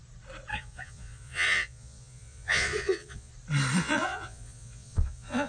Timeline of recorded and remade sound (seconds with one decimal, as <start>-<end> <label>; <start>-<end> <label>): 0.0-0.5 recorded; 0.5-3.3 remade; 3.3-3.8 recorded; 3.8-5.5 remade